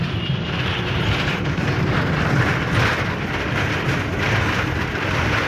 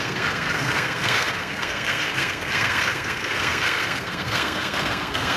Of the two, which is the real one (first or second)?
first